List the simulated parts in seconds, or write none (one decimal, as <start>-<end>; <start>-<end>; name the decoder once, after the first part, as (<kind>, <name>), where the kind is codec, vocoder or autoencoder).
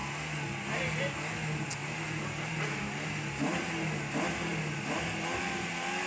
none